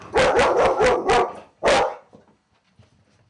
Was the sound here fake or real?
real